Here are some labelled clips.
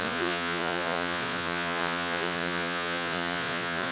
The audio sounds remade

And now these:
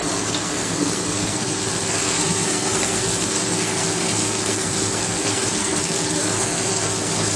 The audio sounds remade